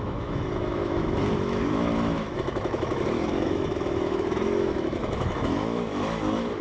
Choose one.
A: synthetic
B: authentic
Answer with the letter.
A